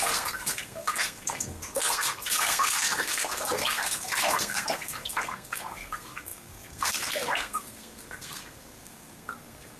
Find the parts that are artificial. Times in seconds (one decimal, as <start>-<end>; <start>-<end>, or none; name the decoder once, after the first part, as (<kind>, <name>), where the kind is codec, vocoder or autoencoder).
0.0-9.8 (codec, SNAC)